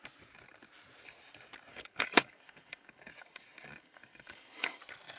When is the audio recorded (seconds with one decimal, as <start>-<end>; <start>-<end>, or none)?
0.0-1.7; 4.8-5.2